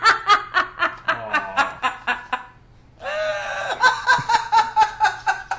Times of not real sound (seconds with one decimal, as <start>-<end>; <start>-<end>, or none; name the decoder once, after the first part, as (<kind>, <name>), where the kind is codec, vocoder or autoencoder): none